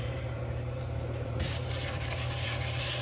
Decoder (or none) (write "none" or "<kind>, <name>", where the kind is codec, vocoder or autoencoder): vocoder, BigVGAN v2